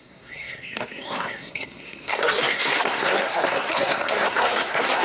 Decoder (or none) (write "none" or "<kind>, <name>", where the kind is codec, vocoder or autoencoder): codec, SNAC